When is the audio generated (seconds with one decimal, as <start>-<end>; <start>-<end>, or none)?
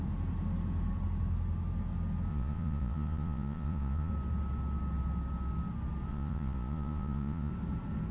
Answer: 2.3-4.1; 6.1-7.5